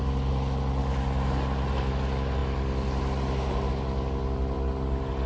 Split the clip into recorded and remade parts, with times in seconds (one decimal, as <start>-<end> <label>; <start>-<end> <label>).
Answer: 0.0-5.3 recorded